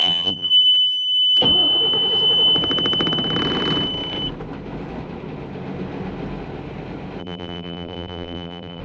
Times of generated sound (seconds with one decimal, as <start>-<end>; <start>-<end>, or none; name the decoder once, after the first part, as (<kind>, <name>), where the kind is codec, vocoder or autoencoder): 0.0-0.5 (vocoder, BigVGAN v2); 7.2-8.8